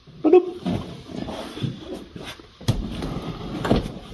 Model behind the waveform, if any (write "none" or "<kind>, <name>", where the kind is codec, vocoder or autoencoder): vocoder, BigVGAN v2